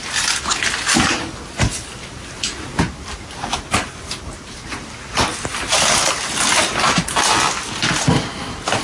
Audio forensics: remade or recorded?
recorded